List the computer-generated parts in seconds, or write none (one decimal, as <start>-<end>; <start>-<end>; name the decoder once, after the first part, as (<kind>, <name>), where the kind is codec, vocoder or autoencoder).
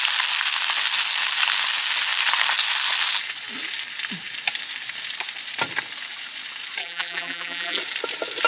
6.8-7.8 (vocoder, BigVGAN v2)